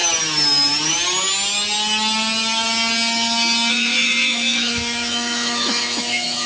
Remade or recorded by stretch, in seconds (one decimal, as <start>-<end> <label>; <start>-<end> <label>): 0.0-3.7 recorded; 3.7-6.5 remade